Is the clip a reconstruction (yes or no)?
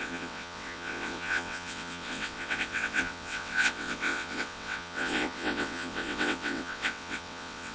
yes